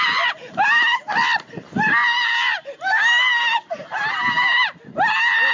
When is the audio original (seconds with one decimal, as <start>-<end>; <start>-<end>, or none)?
0.0-5.5